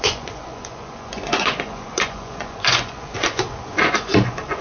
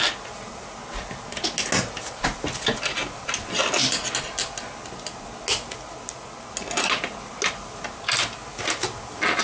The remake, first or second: first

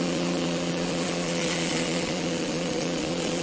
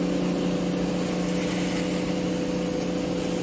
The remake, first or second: first